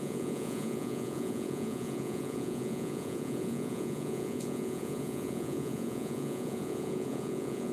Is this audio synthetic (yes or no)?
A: yes